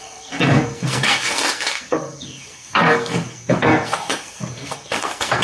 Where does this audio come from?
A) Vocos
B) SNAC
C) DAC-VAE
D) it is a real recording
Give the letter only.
B